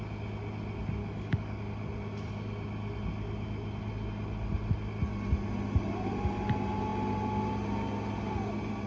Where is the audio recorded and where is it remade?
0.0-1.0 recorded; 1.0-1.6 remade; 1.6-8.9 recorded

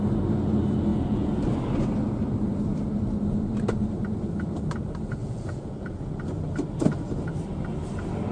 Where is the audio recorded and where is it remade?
0.0-0.9 recorded; 0.9-1.4 remade; 1.4-5.2 recorded; 5.2-5.9 remade; 5.9-8.3 recorded

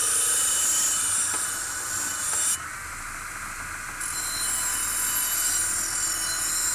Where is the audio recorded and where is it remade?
0.0-6.7 recorded

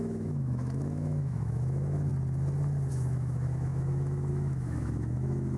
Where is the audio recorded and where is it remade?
0.0-2.1 remade; 2.1-2.9 recorded; 2.9-5.6 remade